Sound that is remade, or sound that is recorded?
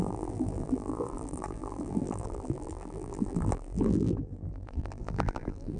remade